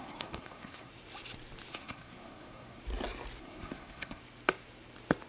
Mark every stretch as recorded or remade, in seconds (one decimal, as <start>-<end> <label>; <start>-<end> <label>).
0.0-0.9 remade; 0.9-1.7 recorded; 1.7-2.8 remade; 2.8-3.4 recorded; 3.4-4.2 remade; 4.2-5.3 recorded